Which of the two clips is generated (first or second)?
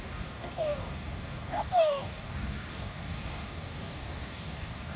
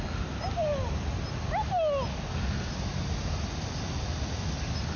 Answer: first